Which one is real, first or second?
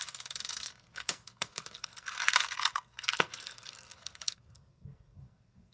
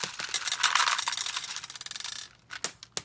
second